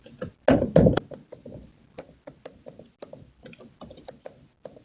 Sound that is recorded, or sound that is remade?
recorded